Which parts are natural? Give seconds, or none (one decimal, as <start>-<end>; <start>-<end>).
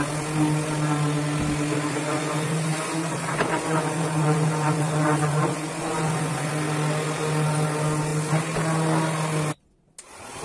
0.0-1.9; 6.5-10.4